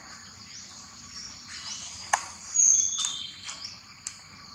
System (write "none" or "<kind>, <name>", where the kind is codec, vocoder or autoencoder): none